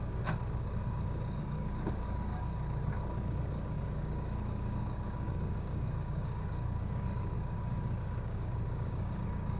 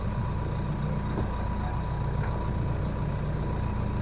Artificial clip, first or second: first